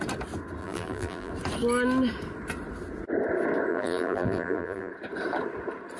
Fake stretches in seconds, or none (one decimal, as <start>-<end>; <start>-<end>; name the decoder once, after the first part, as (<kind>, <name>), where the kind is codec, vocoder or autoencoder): 0.6-1.3 (vocoder, BigVGAN v2); 3.7-4.9